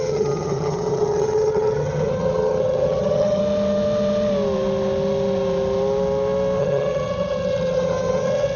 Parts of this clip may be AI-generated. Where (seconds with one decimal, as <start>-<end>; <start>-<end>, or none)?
0.0-3.4; 6.6-8.6

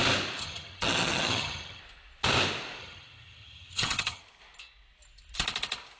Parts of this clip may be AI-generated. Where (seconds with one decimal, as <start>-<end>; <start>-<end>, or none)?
0.4-1.8; 2.8-4.2